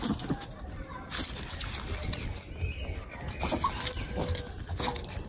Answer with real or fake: real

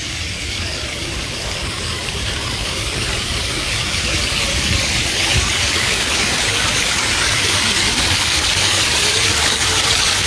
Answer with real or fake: fake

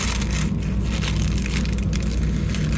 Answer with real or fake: real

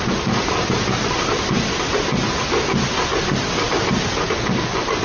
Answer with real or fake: real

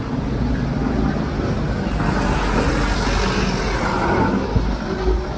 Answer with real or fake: real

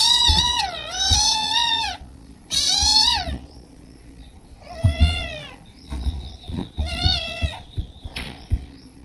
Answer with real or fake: fake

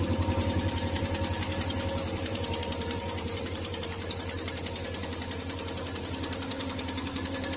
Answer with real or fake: fake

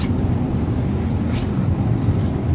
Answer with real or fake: real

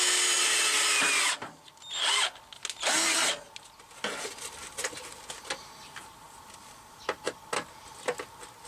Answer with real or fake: real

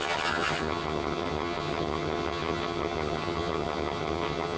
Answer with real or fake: fake